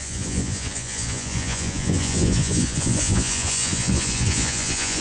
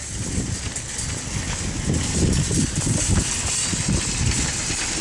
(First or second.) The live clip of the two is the second